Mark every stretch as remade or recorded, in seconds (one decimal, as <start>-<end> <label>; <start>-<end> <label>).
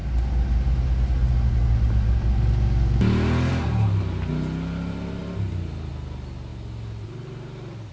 0.0-7.9 recorded